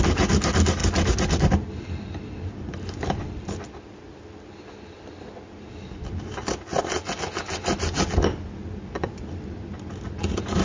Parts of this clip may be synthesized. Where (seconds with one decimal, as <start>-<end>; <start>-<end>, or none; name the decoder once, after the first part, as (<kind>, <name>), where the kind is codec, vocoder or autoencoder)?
none